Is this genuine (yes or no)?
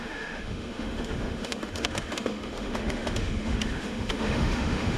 no